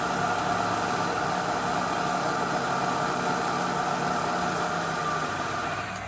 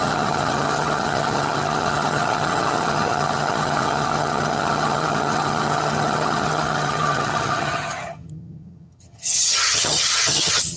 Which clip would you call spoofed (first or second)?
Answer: second